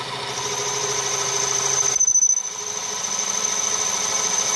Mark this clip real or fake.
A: real